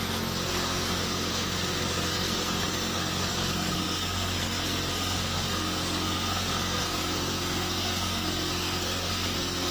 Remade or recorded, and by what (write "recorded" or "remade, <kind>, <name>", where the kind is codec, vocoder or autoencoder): remade, codec, SNAC